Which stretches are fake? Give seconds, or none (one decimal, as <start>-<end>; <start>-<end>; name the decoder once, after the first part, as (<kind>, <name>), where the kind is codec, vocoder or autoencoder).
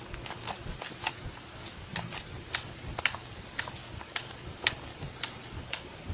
0.0-0.7 (codec, DAC); 1.3-1.9; 3.6-4.9; 5.5-6.1